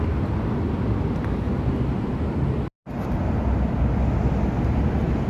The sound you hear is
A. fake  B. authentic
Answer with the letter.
B